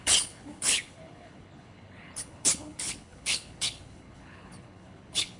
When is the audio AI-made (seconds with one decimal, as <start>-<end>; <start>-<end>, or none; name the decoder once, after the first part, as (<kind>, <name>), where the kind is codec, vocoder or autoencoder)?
0.0-5.4 (codec, HILCodec)